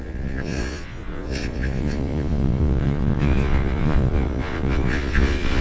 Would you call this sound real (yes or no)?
no